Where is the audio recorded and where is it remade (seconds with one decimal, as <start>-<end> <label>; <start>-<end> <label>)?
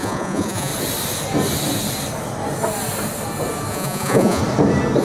0.0-0.7 remade; 0.7-3.7 recorded; 3.7-4.4 remade; 4.4-5.0 recorded